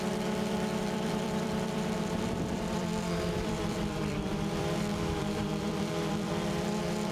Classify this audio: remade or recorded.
remade